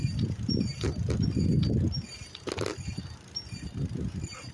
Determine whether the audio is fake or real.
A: real